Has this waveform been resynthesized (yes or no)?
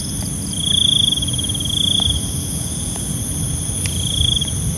no